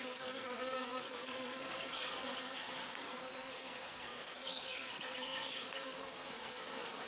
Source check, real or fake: fake